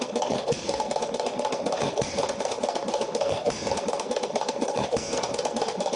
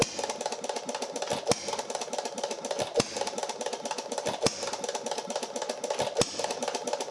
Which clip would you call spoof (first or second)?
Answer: first